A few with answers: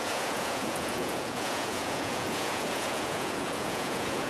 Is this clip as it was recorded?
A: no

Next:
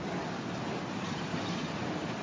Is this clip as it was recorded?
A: yes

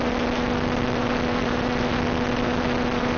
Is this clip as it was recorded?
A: yes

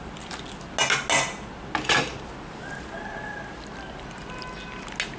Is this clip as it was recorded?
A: yes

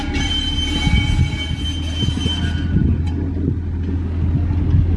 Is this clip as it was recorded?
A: yes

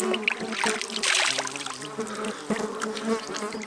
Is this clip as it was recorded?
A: yes